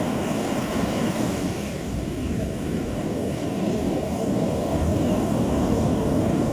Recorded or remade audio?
remade